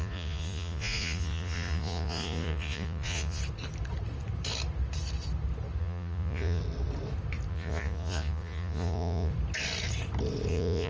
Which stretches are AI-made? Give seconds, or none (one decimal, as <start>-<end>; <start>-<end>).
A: 0.0-3.4; 5.8-6.6; 7.5-9.3; 10.5-10.9